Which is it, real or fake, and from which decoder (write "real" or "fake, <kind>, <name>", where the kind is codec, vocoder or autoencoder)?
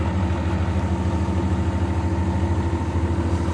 real